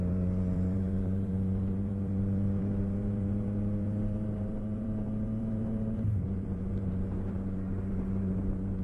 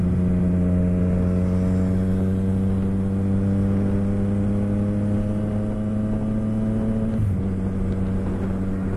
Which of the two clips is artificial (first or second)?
first